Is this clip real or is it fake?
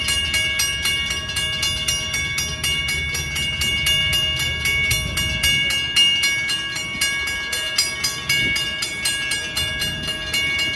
real